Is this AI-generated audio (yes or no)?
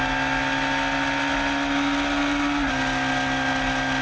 no